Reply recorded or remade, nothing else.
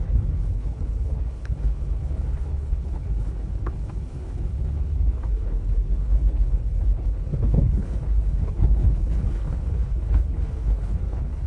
remade